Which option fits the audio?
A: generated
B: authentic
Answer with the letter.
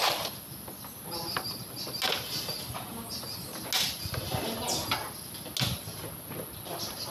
B